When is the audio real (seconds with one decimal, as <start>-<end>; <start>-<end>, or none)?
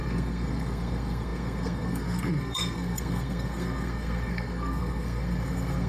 none